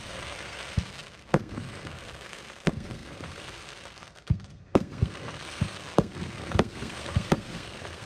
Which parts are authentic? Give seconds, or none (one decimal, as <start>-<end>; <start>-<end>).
none